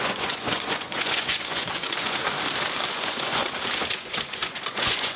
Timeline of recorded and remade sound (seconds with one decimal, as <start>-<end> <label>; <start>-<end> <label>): 0.0-2.2 remade; 2.2-2.9 recorded; 2.9-3.4 remade; 3.4-3.9 recorded; 3.9-5.2 remade